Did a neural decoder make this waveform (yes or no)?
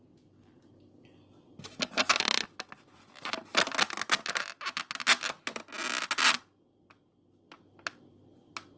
no